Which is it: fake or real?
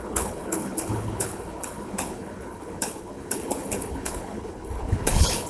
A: fake